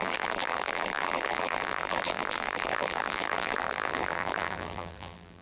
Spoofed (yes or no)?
yes